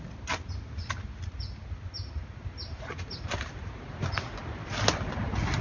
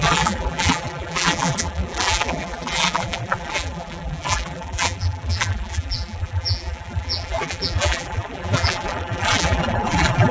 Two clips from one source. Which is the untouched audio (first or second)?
first